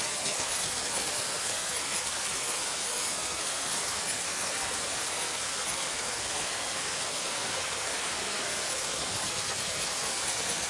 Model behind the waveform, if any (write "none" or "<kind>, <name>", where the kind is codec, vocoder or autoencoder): codec, SNAC